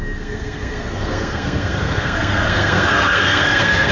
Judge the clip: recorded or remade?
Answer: remade